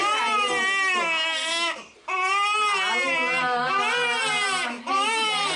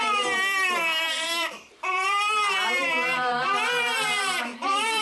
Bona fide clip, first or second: first